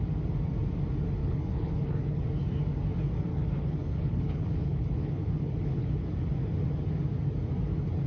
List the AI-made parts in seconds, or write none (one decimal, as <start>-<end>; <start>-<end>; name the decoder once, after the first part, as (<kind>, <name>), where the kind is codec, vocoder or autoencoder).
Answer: 1.2-2.2 (codec, HILCodec); 3.3-5.9